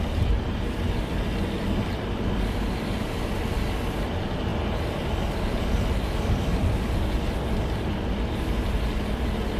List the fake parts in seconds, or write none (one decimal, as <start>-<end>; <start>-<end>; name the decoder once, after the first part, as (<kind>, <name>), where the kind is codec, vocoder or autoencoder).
none